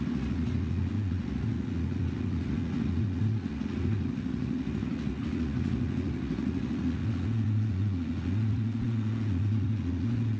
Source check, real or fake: fake